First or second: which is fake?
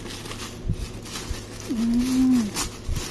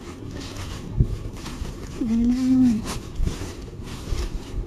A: second